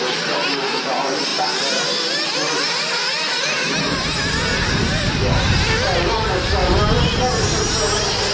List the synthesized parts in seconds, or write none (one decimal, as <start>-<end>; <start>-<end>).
none